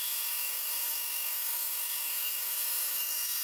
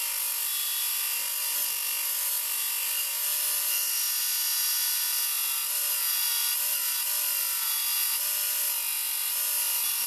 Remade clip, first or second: first